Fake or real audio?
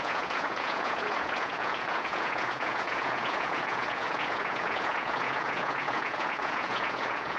fake